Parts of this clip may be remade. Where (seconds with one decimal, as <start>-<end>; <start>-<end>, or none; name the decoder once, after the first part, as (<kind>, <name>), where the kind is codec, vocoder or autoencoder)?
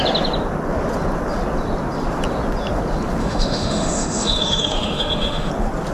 3.2-5.5 (autoencoder, DAC-VAE)